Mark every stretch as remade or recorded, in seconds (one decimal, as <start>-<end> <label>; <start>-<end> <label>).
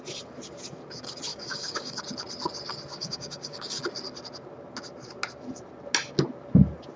0.0-1.3 recorded; 1.3-2.0 remade; 2.0-2.9 recorded; 2.9-3.8 remade; 3.8-7.0 recorded